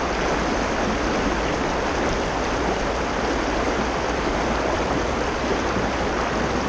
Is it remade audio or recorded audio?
recorded